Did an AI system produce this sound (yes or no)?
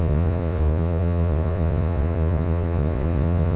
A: yes